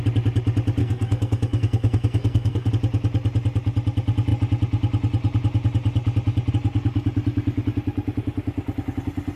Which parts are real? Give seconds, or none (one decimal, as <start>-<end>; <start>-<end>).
0.0-0.8; 2.7-9.4